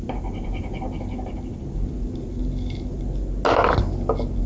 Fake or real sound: real